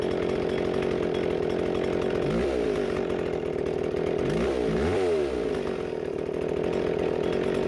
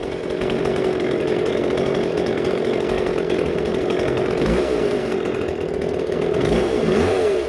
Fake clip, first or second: second